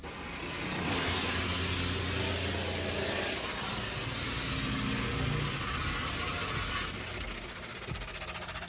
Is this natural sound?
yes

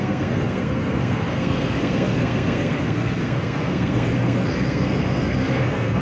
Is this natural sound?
no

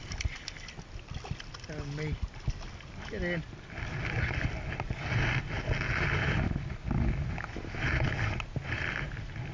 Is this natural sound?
yes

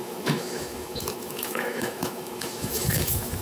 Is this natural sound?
no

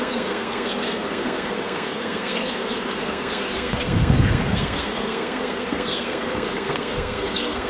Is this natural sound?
no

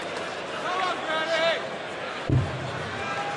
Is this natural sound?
yes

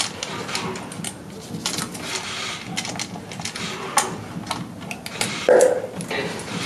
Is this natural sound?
yes